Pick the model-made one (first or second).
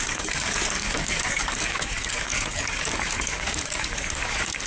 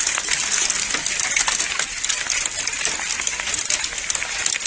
first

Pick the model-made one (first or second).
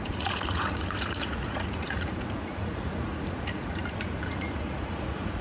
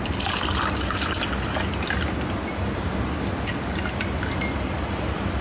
first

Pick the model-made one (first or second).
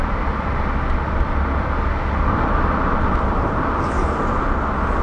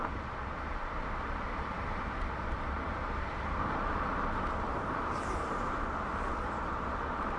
second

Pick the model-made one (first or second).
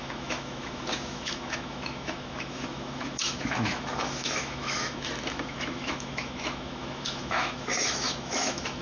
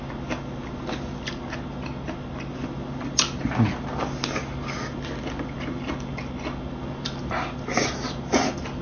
first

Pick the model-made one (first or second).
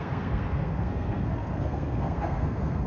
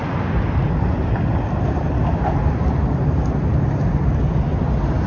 first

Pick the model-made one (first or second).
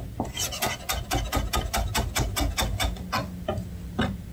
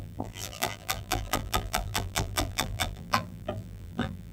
second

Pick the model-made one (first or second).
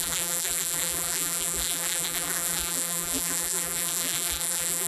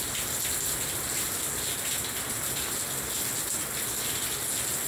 first